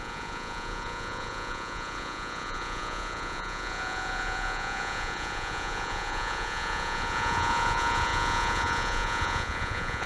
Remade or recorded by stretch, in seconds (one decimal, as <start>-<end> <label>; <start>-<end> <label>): 0.0-10.1 remade